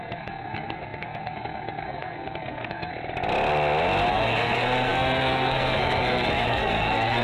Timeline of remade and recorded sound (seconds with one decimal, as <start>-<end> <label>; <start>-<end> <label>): 0.0-2.9 remade; 2.9-4.1 recorded; 4.1-7.2 remade